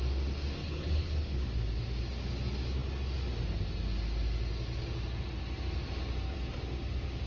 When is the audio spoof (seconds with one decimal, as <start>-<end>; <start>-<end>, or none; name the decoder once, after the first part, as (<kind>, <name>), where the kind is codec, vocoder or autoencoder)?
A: 0.6-1.4 (codec, HILCodec)